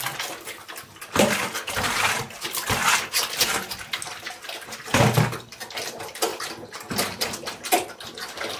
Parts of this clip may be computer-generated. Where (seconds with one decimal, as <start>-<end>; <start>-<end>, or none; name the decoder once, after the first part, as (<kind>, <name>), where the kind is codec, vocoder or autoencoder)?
none